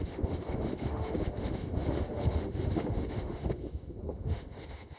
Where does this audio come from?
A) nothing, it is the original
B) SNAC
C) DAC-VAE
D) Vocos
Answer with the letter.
C